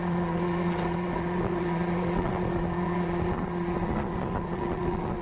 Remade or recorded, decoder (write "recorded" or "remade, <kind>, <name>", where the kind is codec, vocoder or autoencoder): remade, vocoder, Vocos